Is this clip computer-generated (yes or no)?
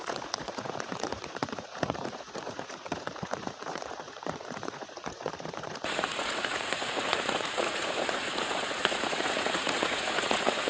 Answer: yes